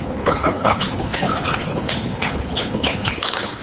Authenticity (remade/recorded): remade